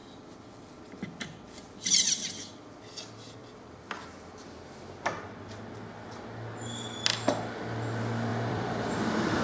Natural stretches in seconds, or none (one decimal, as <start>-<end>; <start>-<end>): 0.0-3.4; 4.6-8.3